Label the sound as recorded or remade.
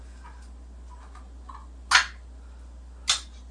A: recorded